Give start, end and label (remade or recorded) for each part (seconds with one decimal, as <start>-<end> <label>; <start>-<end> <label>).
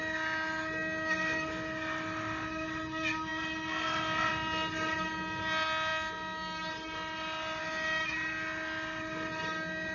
0.0-9.9 recorded